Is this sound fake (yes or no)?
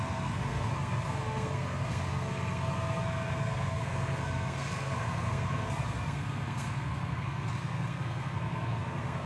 yes